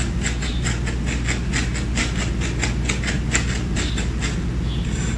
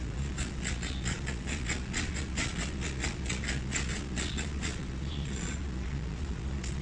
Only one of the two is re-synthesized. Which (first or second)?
second